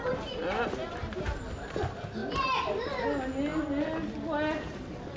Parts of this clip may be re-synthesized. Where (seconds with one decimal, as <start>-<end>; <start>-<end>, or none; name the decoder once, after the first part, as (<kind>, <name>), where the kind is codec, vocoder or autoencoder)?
none